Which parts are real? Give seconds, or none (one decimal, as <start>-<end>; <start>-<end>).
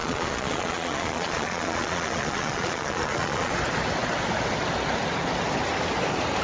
3.5-6.4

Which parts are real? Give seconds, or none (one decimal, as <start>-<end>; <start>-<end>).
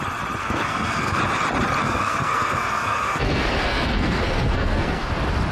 0.0-0.4; 1.2-1.8; 5.1-5.5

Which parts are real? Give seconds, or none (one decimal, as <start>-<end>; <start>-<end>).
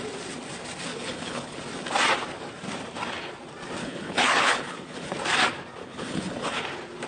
0.0-0.9; 1.6-3.8; 5.1-5.8; 6.6-7.1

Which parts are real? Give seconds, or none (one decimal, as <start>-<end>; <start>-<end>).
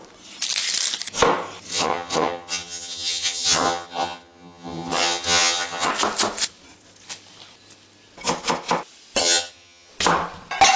0.0-1.7; 5.9-9.2; 9.9-10.8